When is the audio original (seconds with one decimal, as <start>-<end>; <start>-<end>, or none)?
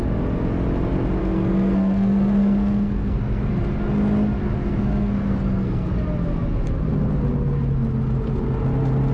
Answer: 0.0-1.2; 3.5-4.4; 5.9-9.1